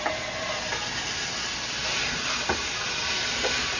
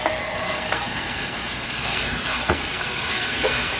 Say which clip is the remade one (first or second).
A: second